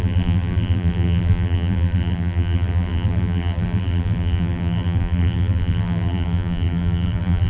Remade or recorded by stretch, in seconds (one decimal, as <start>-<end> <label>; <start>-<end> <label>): 0.0-7.5 remade

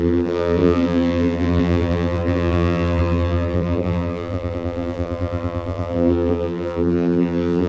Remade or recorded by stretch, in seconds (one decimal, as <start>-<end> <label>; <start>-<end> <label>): 0.0-7.7 remade

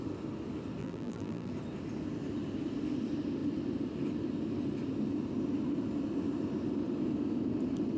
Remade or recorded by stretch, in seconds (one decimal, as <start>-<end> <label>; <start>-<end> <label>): 0.0-0.8 recorded; 0.8-1.5 remade; 1.5-8.0 recorded

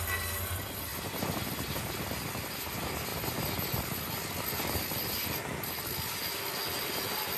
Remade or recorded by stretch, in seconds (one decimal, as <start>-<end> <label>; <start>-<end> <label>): 0.0-0.9 recorded; 0.9-1.9 remade; 1.9-7.4 recorded

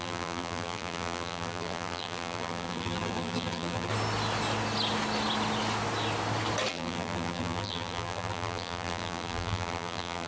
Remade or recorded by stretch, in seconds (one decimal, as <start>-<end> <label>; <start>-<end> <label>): 0.0-3.9 remade; 3.9-6.7 recorded; 6.7-10.3 remade

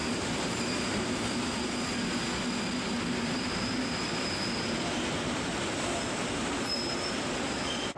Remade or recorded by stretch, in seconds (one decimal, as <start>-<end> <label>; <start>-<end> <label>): 0.0-1.3 remade; 1.3-3.5 recorded; 3.5-5.5 remade; 5.5-8.0 recorded

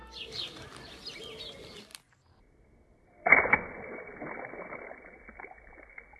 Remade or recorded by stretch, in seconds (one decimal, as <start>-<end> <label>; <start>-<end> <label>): 0.0-1.4 remade; 1.4-1.9 recorded; 1.9-5.6 remade; 5.6-6.2 recorded